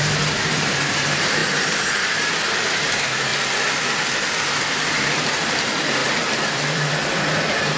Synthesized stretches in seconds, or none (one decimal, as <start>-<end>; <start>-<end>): 0.0-3.3; 4.6-7.8